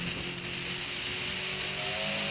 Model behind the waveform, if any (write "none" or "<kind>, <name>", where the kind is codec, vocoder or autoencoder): none